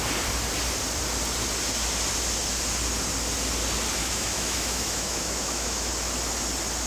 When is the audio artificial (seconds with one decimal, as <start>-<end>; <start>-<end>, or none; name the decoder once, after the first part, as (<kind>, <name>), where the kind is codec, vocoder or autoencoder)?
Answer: 4.0-5.9 (autoencoder, DAC-VAE)